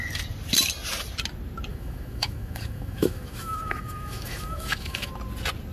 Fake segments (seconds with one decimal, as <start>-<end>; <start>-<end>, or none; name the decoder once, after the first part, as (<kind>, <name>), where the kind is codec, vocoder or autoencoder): 1.7-5.1 (autoencoder, DAC-VAE)